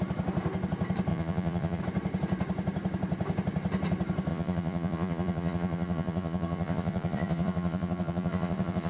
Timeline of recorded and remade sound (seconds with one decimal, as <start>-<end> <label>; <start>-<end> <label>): 0.0-1.1 recorded; 1.1-1.8 remade; 1.8-4.3 recorded; 4.3-8.9 remade